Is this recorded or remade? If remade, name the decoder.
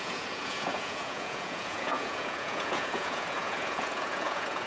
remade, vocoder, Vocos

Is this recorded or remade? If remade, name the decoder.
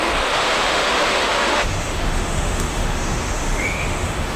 remade, autoencoder, DAC-VAE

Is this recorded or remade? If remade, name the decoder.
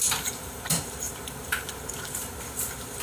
remade, vocoder, BigVGAN v2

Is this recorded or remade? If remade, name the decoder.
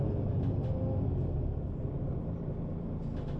recorded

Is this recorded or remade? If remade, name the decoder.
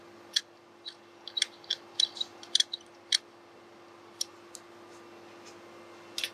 recorded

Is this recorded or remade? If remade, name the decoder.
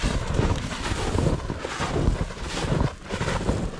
recorded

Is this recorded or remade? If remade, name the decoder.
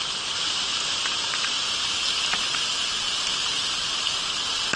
recorded